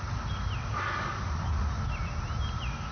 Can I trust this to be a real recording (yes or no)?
yes